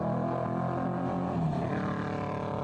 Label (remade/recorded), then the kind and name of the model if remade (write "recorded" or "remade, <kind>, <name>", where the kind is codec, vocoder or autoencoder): recorded